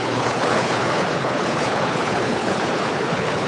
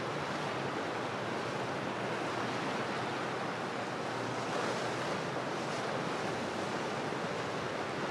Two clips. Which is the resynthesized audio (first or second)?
first